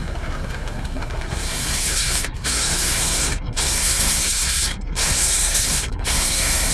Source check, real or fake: fake